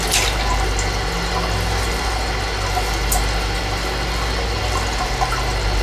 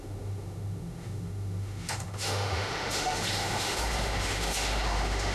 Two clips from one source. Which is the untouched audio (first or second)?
first